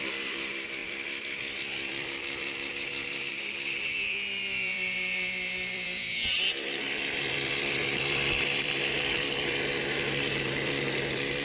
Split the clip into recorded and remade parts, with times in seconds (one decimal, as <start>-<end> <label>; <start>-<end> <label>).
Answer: 0.0-11.4 remade